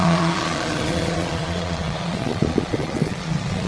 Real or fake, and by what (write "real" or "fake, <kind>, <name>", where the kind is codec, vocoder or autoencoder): fake, vocoder, Vocos